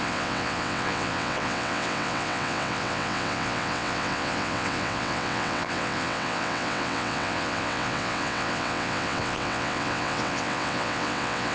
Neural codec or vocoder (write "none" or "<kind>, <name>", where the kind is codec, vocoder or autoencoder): vocoder, WaveNeXt